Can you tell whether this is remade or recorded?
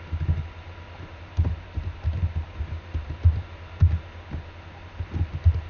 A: recorded